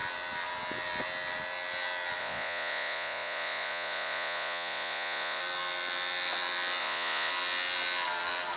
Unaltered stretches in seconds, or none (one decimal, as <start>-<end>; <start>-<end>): 0.0-2.2; 5.4-6.8; 7.3-8.6